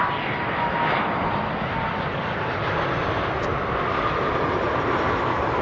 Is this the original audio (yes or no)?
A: yes